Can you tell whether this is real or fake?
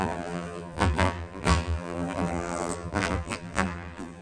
fake